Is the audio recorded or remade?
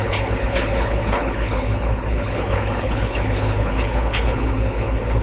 remade